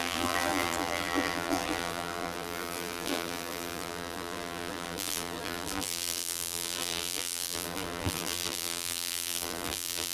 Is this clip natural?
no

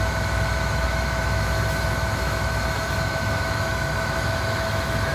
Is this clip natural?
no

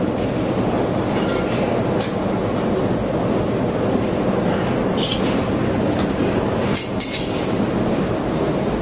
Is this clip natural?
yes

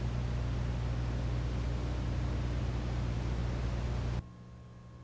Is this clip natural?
yes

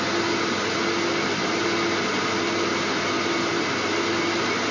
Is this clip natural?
yes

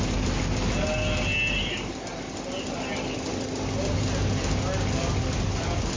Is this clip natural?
yes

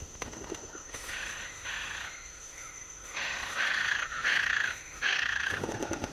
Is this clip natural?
no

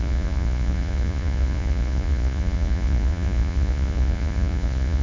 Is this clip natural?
no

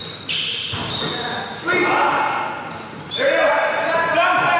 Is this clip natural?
yes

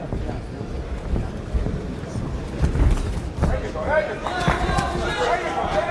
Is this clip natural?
yes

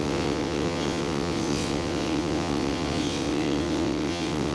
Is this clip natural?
no